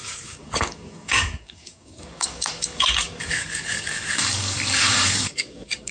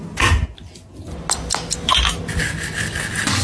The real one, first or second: second